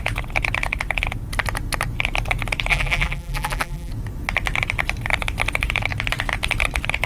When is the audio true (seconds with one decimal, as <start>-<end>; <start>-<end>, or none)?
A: 0.0-2.7; 3.9-7.1